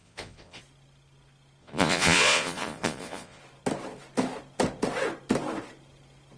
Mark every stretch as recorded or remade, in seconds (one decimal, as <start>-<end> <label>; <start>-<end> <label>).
0.0-0.6 remade; 0.6-1.6 recorded; 1.6-3.4 remade; 3.4-6.4 recorded